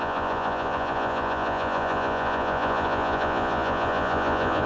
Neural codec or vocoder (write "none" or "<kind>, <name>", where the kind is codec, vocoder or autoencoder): vocoder, Vocos